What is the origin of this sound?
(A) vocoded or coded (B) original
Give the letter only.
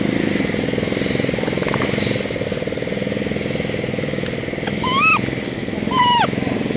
B